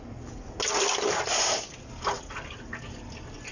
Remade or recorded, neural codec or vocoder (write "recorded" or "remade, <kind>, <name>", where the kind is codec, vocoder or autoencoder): recorded